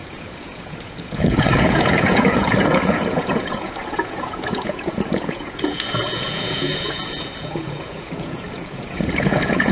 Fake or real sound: fake